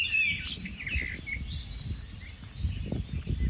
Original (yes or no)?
yes